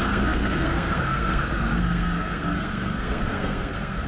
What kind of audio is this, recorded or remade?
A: remade